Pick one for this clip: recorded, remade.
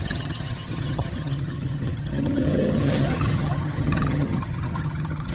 remade